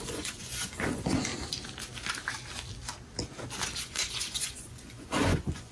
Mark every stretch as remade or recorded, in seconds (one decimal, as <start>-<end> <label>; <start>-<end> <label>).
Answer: 0.0-1.3 remade; 1.3-3.8 recorded; 3.8-5.7 remade